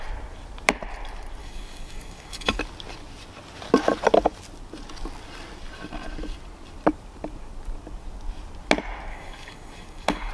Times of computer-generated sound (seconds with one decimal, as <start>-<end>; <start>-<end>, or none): 1.4-2.6; 9.1-10.3